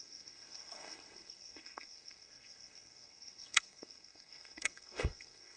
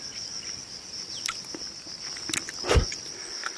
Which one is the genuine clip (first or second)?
second